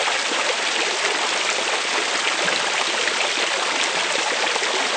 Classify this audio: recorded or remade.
recorded